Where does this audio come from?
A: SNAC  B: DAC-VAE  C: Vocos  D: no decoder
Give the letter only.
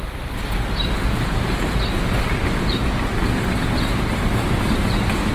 D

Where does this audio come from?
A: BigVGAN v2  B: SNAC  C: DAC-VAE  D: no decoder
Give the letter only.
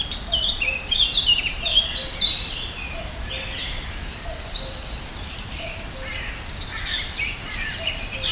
A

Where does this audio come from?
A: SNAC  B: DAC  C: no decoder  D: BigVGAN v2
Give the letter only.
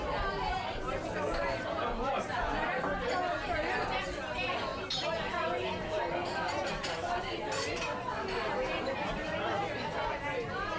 C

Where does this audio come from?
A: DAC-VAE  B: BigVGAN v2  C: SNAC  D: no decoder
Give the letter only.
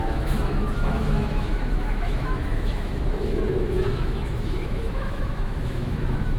A